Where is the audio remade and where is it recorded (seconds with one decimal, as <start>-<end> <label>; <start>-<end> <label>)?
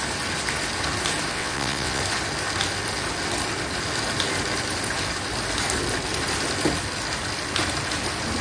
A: 0.0-1.3 recorded; 1.3-2.0 remade; 2.0-8.4 recorded